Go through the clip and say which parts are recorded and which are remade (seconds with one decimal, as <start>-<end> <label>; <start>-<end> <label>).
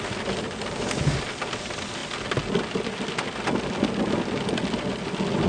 0.0-5.5 recorded